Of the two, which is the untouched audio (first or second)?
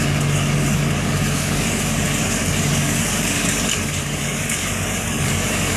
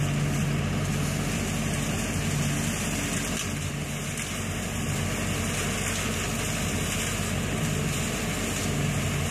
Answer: second